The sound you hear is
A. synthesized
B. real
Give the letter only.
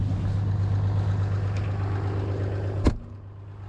B